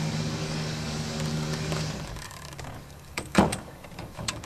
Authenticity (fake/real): fake